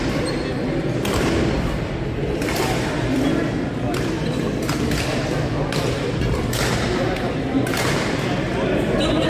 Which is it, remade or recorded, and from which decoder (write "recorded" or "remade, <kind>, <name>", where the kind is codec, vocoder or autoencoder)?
recorded